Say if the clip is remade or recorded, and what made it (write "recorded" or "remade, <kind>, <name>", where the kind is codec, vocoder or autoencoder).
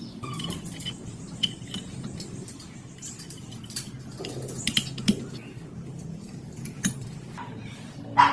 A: recorded